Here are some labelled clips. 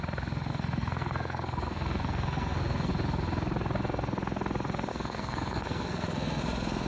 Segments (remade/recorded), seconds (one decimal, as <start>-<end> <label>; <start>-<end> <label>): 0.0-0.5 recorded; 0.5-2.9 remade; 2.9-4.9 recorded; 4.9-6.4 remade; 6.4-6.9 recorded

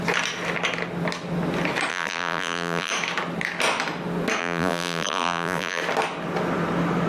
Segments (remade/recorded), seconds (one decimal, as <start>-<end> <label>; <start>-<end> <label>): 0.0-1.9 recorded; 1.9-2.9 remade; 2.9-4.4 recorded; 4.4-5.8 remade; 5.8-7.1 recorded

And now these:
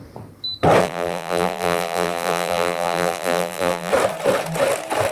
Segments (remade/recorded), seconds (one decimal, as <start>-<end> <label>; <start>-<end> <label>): 0.0-0.8 recorded; 0.8-3.9 remade; 3.9-5.1 recorded